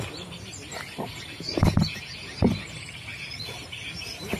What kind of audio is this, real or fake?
real